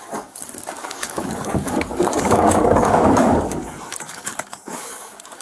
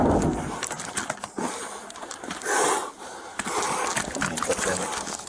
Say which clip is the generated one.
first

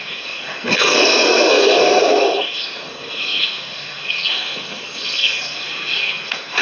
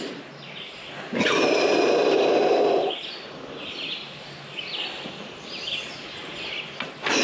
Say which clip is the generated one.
first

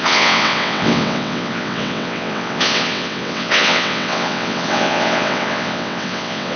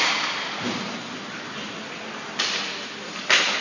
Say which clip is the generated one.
first